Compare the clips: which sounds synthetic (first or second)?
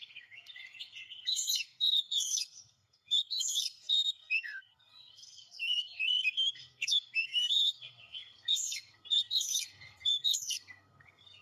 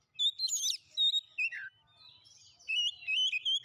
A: first